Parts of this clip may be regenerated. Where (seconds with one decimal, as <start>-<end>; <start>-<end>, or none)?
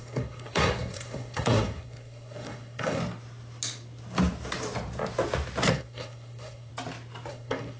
0.0-3.0; 5.7-6.7; 7.3-7.8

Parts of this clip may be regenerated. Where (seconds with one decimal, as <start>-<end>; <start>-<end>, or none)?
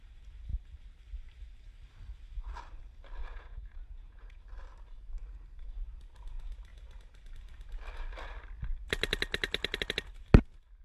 3.2-4.4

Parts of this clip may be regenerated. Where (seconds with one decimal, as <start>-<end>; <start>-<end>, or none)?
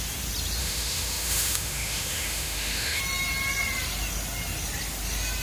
0.6-3.0